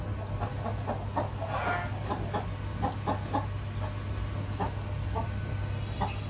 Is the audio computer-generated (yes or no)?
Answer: no